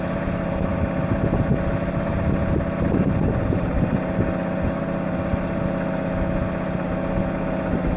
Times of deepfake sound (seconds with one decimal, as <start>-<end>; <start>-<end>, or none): none